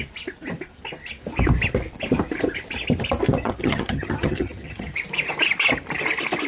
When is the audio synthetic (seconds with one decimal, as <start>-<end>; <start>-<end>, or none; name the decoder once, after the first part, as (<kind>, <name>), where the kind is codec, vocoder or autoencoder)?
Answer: 3.4-5.0 (vocoder, HiFi-GAN)